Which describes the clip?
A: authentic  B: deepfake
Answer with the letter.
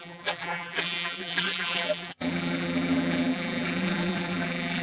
B